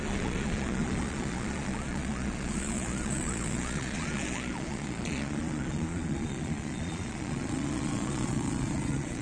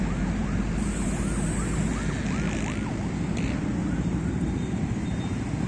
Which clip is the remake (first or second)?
first